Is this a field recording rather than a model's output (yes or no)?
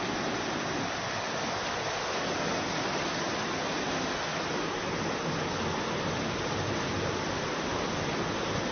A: yes